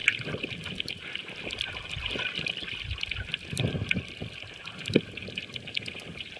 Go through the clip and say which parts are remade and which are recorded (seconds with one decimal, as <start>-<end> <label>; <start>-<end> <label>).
0.0-6.4 recorded